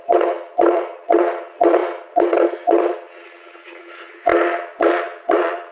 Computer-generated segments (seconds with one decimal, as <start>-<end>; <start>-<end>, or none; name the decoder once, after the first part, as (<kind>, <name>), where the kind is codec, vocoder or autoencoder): 0.0-5.7 (vocoder, Vocos)